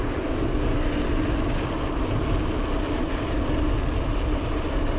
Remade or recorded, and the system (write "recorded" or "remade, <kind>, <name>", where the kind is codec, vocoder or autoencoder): recorded